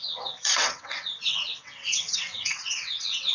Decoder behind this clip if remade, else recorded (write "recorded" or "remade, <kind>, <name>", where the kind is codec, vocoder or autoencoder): remade, vocoder, WaveNeXt